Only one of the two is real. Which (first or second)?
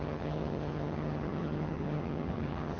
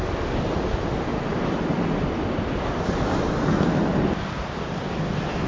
second